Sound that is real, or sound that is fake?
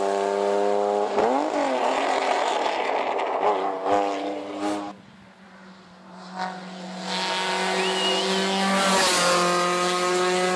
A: real